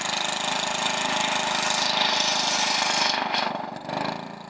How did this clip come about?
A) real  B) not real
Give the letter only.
A